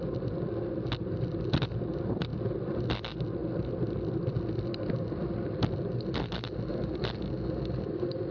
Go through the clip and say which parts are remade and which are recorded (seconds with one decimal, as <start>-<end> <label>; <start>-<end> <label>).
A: 0.0-8.3 recorded